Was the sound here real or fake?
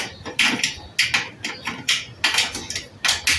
real